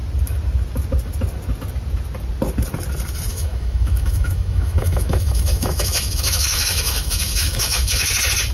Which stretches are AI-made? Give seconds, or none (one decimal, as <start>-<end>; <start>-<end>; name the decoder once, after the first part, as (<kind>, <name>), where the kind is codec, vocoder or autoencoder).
3.3-8.1 (autoencoder, DAC-VAE)